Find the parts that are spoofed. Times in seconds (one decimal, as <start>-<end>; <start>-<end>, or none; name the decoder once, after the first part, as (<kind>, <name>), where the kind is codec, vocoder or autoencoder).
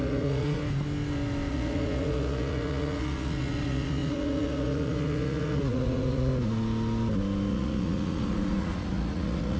0.0-0.6 (vocoder, Vocos); 1.5-6.3; 7.5-9.6